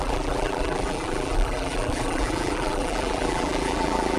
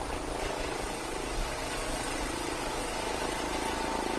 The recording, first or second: second